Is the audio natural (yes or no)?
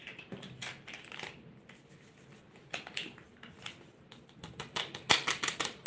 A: yes